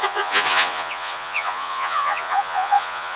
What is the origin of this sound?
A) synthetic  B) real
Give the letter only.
A